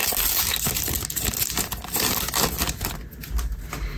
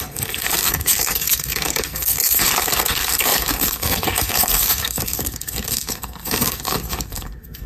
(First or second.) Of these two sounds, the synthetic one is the second